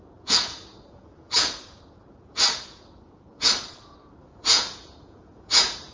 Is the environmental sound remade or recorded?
remade